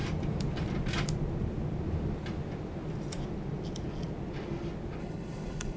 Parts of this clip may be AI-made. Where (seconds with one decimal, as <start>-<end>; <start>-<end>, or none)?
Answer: 5.0-5.8